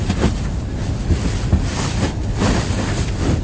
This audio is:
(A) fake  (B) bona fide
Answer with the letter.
B